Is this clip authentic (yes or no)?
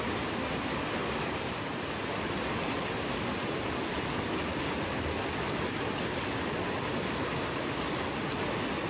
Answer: yes